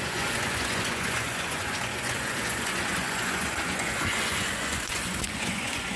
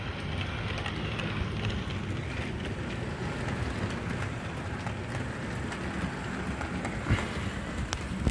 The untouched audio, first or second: second